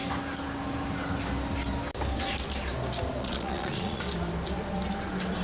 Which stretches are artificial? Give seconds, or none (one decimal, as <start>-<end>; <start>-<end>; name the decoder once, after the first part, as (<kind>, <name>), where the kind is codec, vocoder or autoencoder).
3.2-4.0 (vocoder, Vocos)